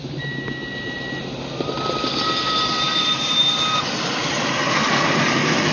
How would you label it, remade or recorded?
recorded